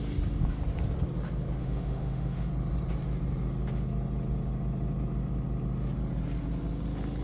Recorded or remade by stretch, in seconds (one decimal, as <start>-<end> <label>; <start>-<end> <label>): 0.0-1.6 recorded; 1.6-2.5 remade; 2.5-7.2 recorded